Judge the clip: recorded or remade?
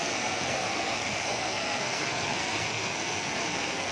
remade